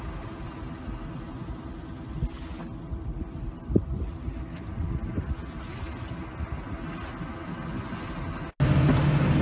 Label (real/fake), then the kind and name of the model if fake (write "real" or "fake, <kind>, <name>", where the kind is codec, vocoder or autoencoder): real